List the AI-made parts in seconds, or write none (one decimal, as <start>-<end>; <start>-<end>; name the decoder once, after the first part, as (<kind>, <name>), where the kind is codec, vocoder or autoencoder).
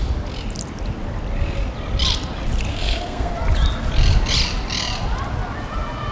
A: 2.7-3.3 (codec, SNAC)